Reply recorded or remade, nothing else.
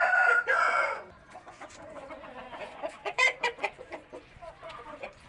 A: remade